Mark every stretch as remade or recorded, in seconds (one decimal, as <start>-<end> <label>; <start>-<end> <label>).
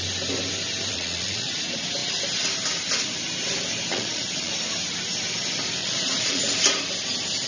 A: 0.0-0.9 recorded; 0.9-1.5 remade; 1.5-3.9 recorded; 3.9-4.5 remade; 4.5-5.8 recorded; 5.8-6.4 remade; 6.4-7.5 recorded